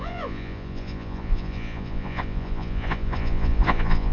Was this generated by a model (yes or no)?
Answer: yes